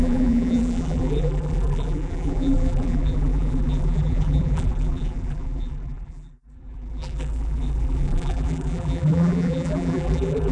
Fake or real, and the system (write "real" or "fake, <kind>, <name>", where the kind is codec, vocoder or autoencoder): fake, vocoder, BigVGAN v2